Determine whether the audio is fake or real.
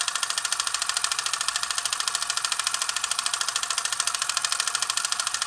real